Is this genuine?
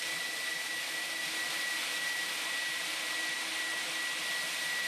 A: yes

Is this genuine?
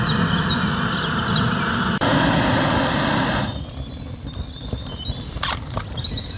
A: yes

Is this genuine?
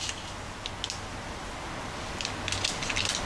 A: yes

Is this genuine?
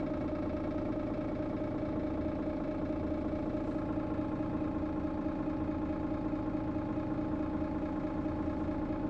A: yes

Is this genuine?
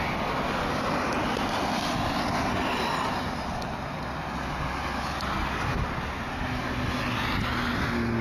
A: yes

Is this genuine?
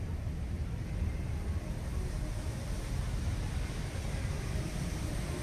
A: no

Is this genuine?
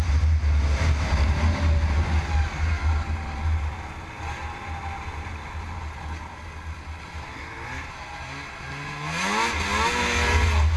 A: yes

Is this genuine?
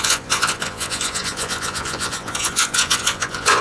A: no